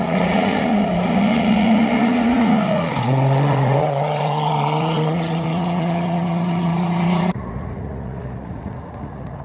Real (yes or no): no